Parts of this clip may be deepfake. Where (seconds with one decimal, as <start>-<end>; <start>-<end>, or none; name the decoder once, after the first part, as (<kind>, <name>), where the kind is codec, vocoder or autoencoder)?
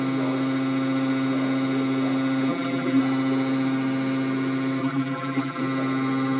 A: 2.5-3.0 (vocoder, BigVGAN v2); 4.8-5.6